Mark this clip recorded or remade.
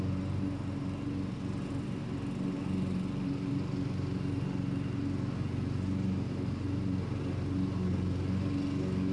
recorded